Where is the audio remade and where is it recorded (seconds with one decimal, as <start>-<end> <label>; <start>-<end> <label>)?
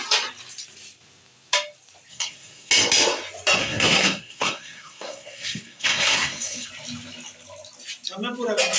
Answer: 0.0-2.1 recorded; 2.1-2.7 remade; 2.7-3.6 recorded; 3.6-6.7 remade; 6.7-8.8 recorded